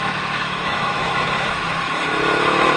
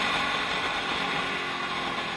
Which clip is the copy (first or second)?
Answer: first